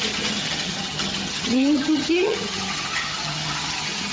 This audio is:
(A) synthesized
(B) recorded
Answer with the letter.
A